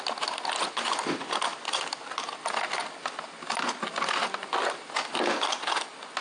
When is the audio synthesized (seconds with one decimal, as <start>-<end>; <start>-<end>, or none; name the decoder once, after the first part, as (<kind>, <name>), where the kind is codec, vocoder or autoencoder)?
none